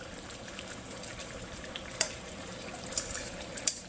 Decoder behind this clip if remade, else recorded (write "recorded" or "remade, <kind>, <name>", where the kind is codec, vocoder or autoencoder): remade, vocoder, BigVGAN v2